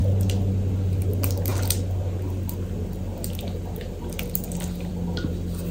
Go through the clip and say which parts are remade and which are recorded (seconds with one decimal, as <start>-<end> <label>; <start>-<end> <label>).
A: 0.0-5.7 recorded